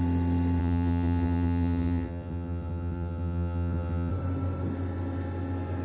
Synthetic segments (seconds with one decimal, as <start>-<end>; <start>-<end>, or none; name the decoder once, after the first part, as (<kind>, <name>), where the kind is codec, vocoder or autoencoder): 0.6-4.1 (vocoder, WaveNeXt)